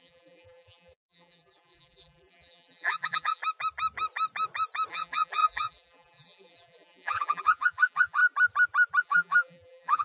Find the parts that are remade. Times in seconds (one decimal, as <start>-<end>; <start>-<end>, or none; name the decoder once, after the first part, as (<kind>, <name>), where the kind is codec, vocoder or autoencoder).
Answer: 0.0-3.4 (vocoder, BigVGAN v2); 4.9-8.2; 9.0-10.0